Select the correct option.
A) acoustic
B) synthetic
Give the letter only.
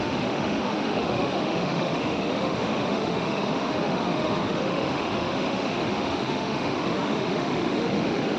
B